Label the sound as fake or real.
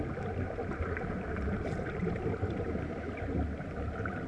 real